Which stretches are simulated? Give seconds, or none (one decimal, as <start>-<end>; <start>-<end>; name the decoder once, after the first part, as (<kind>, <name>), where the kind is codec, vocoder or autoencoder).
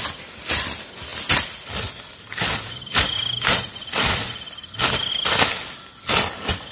none